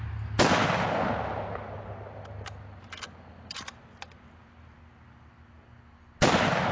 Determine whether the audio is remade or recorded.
recorded